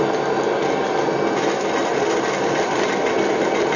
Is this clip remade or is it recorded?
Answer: recorded